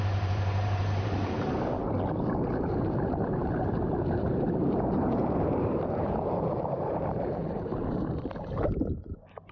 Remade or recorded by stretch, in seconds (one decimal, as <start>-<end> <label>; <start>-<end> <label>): 0.0-1.8 remade; 1.8-2.8 recorded; 2.8-7.7 remade; 7.7-8.4 recorded; 8.4-9.5 remade